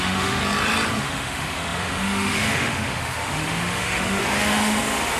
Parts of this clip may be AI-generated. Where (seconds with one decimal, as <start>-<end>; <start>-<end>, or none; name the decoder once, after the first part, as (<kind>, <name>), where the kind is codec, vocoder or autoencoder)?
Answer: 0.0-0.4 (autoencoder, DAC-VAE); 1.0-5.2